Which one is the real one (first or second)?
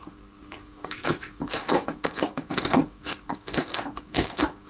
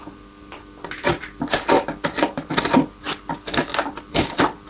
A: second